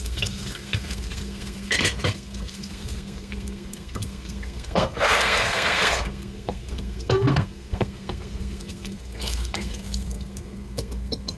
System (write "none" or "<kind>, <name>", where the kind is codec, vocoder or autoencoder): codec, SNAC